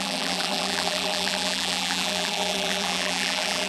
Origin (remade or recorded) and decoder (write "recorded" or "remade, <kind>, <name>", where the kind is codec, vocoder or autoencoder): remade, vocoder, BigVGAN v2